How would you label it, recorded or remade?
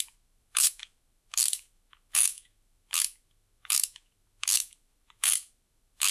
remade